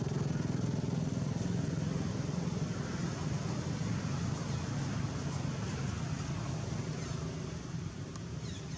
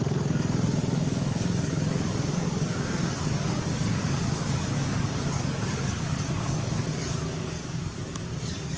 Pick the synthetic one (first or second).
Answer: second